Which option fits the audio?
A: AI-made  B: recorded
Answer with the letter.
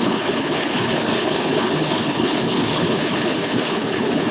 A